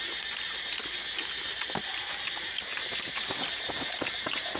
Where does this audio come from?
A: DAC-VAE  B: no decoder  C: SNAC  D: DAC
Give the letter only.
B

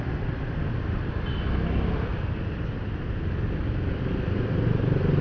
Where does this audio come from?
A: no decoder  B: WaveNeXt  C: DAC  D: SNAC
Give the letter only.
A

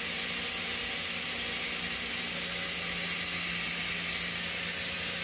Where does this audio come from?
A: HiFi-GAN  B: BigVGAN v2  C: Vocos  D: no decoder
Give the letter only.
D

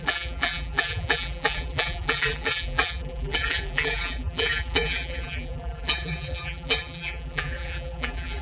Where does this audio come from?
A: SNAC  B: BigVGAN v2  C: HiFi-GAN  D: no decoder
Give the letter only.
B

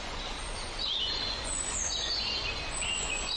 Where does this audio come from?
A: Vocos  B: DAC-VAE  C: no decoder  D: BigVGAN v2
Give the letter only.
A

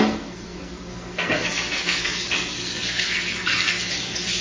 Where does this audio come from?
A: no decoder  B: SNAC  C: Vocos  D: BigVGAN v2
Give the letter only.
B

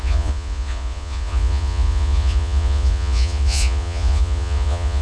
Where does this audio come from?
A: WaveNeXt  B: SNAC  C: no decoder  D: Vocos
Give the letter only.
D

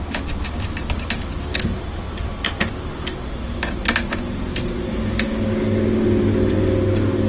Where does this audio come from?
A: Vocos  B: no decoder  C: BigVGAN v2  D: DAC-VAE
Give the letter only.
B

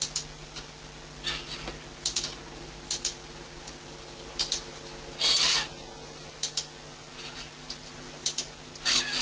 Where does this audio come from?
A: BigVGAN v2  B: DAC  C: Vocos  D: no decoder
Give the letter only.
D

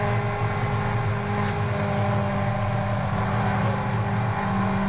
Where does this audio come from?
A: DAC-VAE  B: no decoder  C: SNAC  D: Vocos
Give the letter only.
B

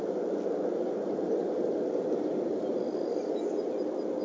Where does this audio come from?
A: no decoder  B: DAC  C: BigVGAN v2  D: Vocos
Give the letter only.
A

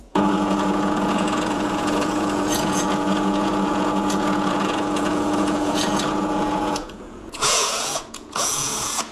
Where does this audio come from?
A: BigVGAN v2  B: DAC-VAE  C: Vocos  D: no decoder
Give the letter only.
C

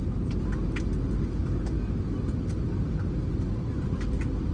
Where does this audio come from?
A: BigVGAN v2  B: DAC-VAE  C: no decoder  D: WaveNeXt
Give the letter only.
C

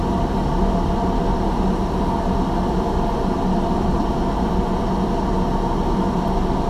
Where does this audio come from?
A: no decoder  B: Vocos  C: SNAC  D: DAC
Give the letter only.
A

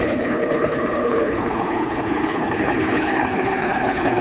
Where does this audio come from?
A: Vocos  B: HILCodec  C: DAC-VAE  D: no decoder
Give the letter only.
B